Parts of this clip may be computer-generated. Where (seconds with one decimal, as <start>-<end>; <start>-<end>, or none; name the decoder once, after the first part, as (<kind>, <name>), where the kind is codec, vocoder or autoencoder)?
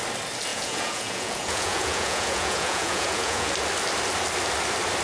0.5-3.5 (vocoder, Vocos)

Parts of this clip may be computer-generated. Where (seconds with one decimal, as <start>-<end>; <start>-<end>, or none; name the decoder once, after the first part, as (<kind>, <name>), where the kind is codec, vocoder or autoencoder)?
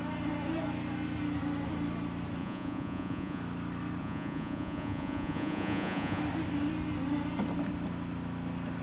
2.4-3.4 (vocoder, Vocos); 4.0-6.2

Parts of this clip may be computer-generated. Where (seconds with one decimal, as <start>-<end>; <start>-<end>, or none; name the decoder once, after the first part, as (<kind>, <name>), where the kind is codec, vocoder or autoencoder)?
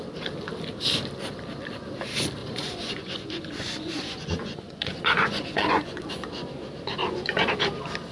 2.4-6.1 (vocoder, Vocos); 7.0-7.5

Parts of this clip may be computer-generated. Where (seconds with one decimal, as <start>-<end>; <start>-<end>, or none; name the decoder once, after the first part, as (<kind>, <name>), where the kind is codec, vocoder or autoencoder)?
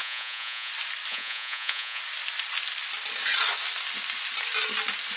0.0-0.7 (vocoder, Vocos); 1.1-2.0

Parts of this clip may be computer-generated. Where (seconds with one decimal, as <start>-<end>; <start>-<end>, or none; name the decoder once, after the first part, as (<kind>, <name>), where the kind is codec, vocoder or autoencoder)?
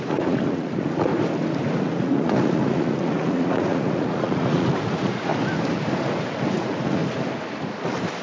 0.0-1.1 (vocoder, Vocos); 1.8-5.3; 6.5-7.0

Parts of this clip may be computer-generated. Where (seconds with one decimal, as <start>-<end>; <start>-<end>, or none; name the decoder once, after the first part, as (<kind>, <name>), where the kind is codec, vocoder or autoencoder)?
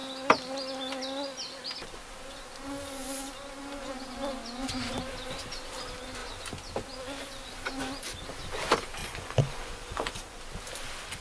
9.0-10.4 (vocoder, Vocos)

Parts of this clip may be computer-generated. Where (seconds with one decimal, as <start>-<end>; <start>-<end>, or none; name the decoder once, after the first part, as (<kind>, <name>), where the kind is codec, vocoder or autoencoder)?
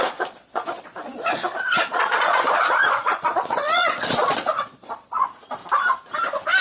0.0-5.6 (vocoder, Vocos)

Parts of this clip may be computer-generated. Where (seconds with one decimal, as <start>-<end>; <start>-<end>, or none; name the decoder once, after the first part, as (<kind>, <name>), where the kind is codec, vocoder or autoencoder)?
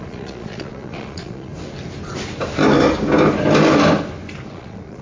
0.0-1.5 (vocoder, Vocos); 4.5-5.0